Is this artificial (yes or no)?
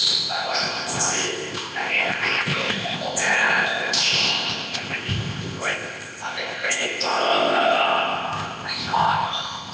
yes